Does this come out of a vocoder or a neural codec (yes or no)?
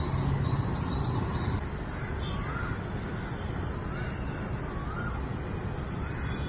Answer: no